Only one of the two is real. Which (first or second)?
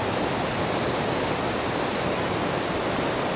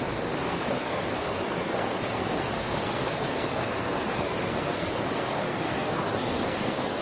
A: first